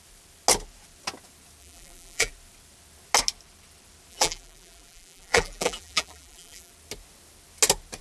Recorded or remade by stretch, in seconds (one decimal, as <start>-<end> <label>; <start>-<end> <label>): 0.0-1.6 recorded; 1.6-2.3 remade; 2.3-4.1 recorded; 4.1-6.7 remade; 6.7-8.0 recorded